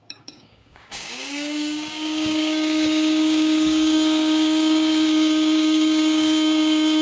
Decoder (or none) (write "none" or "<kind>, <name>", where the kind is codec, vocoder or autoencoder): codec, DAC